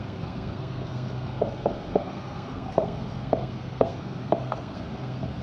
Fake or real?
fake